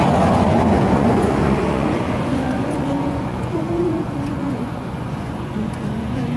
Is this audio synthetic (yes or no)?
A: yes